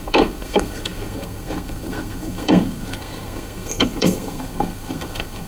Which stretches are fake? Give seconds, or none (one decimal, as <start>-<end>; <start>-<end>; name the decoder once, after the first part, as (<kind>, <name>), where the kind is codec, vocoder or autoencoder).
0.0-5.5 (codec, SNAC)

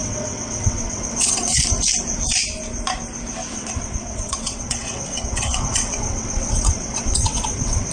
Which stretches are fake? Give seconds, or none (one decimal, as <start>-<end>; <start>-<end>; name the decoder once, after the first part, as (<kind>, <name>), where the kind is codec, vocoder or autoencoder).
0.0-1.6 (vocoder, WaveNeXt); 3.5-7.9

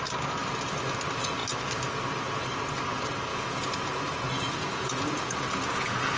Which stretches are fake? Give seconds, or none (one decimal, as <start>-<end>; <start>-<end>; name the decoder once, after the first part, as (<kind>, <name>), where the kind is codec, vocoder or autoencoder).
3.3-6.2 (vocoder, Vocos)

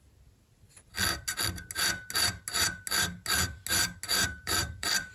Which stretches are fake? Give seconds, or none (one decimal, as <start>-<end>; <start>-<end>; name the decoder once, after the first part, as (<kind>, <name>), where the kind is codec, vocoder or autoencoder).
4.4-5.1 (vocoder, BigVGAN v2)

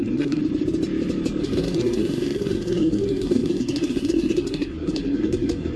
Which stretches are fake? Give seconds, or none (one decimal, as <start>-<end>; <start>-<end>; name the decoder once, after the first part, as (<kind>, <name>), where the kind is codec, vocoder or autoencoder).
0.0-0.4 (codec, SNAC); 1.4-5.8

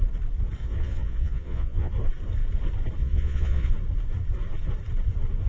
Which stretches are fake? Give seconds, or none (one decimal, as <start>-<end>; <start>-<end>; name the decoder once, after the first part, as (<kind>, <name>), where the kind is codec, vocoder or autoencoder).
0.6-1.9 (vocoder, Vocos); 3.0-3.7

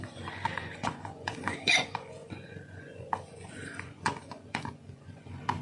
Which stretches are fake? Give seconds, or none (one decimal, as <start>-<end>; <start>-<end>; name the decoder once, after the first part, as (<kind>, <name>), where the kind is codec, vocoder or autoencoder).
0.0-5.6 (vocoder, Vocos)

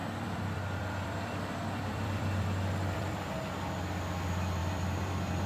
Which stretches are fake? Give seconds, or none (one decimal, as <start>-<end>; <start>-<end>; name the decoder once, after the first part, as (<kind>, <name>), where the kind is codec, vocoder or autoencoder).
0.0-3.3 (vocoder, BigVGAN v2); 4.6-5.5